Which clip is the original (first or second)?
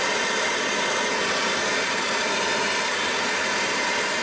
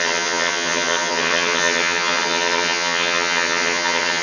first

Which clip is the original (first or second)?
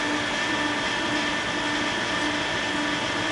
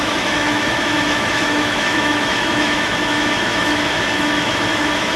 first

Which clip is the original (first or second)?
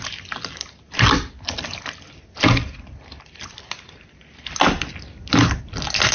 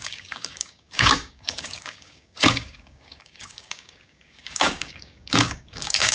first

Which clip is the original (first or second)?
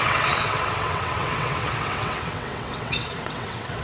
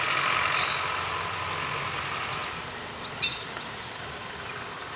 second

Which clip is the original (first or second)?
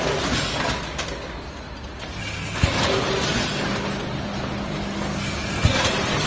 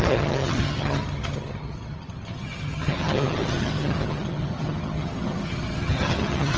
first